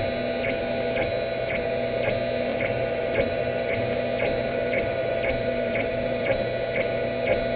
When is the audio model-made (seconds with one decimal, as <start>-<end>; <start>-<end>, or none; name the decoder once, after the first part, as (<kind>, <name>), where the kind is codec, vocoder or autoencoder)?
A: 2.5-3.7 (vocoder, BigVGAN v2); 4.5-6.4